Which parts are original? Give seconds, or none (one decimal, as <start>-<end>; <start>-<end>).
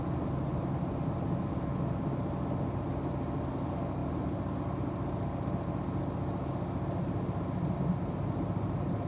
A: 0.0-9.1